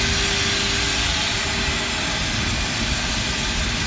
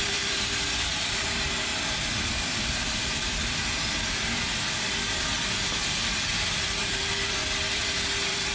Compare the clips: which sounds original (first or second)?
first